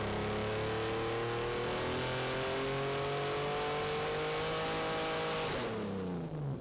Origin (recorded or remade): recorded